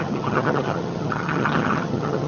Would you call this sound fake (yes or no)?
yes